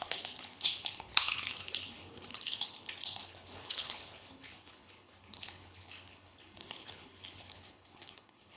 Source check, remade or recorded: remade